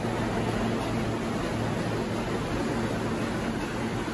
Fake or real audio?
real